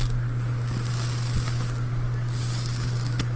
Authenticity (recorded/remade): recorded